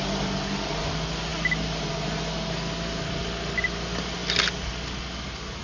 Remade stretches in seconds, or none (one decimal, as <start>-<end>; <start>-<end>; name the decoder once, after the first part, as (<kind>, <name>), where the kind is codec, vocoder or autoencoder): none